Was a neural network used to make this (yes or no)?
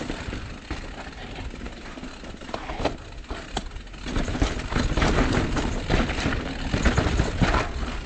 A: no